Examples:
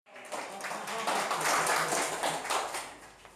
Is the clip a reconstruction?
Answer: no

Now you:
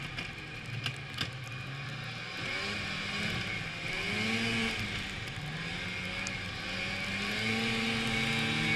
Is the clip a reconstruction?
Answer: no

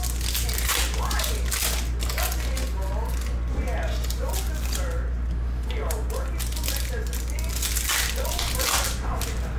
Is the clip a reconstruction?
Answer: no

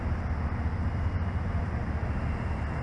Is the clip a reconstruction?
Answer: no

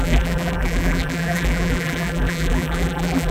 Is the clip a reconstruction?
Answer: yes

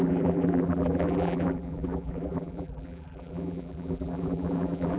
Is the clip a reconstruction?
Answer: yes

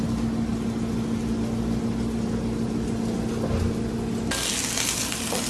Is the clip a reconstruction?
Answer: no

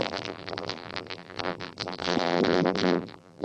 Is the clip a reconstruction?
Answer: yes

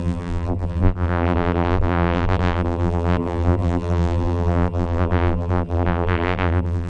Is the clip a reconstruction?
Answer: yes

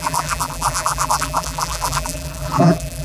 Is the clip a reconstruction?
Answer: yes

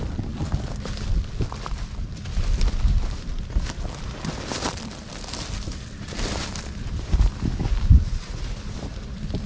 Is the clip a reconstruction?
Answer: yes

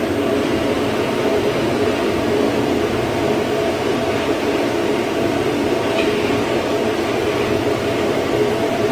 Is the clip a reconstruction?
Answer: yes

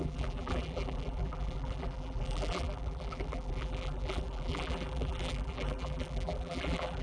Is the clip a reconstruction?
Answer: yes